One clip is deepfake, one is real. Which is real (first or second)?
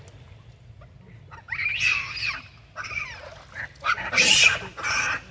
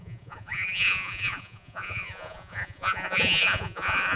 first